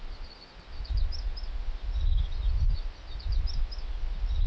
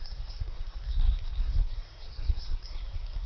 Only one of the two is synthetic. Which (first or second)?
second